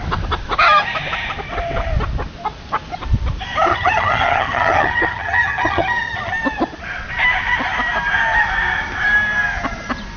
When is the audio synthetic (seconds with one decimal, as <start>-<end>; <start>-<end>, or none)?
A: 3.7-6.3